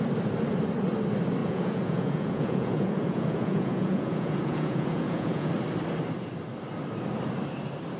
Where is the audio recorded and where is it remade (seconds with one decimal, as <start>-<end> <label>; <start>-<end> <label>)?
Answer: 0.0-1.4 recorded; 1.4-5.5 remade; 5.5-8.0 recorded